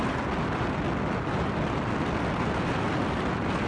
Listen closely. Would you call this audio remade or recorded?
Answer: recorded